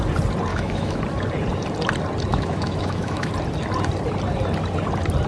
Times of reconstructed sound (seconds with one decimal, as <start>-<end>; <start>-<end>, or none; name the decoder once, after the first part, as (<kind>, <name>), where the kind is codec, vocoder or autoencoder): 0.5-1.0 (autoencoder, DAC-VAE); 2.3-3.3